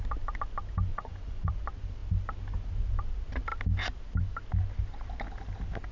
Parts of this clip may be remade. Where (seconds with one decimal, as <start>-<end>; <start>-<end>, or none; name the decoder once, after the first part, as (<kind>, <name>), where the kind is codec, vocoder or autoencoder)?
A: 0.9-1.5 (vocoder, Vocos)